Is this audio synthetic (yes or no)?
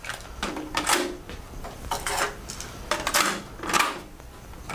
no